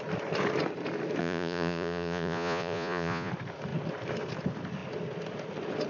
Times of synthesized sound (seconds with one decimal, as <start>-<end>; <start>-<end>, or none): 1.2-3.3